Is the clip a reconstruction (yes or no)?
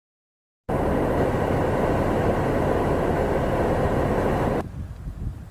no